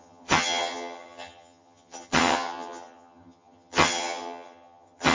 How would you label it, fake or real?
fake